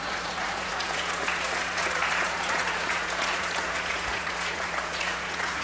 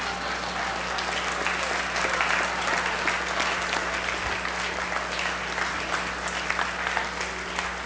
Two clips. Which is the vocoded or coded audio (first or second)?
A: first